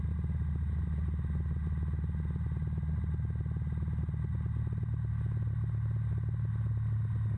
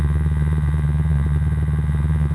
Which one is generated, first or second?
second